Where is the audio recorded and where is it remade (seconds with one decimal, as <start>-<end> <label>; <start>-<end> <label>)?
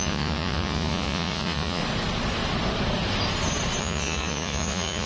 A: 0.0-1.8 remade; 1.8-3.8 recorded; 3.8-5.1 remade